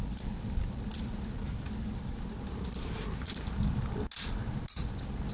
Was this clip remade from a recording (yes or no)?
no